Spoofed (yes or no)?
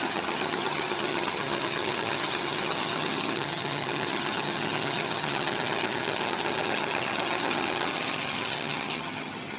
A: yes